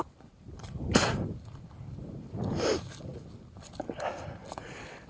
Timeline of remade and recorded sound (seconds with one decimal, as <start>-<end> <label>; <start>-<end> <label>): 0.0-5.1 recorded